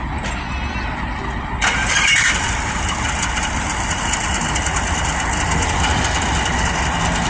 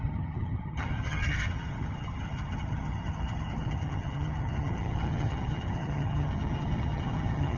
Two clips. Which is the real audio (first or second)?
first